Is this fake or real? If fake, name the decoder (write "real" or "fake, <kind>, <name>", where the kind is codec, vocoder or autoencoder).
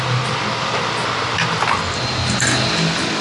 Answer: real